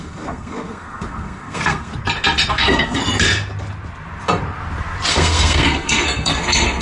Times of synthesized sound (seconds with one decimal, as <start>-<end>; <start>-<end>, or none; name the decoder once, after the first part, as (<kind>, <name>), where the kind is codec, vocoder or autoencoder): 0.0-1.9 (codec, SNAC); 2.5-3.0; 5.1-6.8